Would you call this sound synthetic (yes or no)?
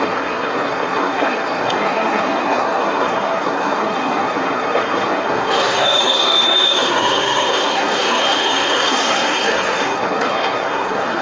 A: yes